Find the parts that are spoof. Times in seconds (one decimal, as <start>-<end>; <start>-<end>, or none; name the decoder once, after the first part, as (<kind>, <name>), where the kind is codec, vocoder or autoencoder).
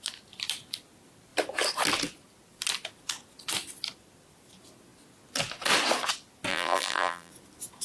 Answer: 6.5-7.3 (vocoder, BigVGAN v2)